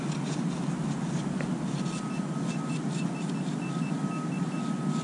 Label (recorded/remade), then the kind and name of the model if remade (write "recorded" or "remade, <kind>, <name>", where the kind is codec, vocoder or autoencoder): recorded